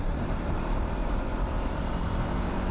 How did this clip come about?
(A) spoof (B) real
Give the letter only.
A